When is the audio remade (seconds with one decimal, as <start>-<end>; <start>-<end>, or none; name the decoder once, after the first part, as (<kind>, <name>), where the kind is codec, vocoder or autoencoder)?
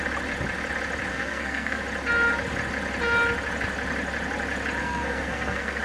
1.1-1.8 (codec, SNAC); 4.8-5.8